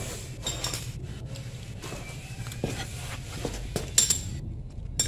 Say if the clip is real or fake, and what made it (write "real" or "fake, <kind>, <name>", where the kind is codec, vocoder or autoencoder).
real